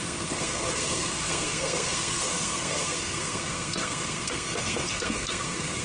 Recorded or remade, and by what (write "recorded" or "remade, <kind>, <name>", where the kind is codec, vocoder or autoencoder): remade, codec, SNAC